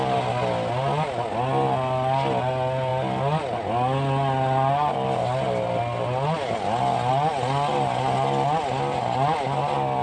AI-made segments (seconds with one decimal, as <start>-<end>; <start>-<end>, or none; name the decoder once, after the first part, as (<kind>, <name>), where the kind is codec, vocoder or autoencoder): none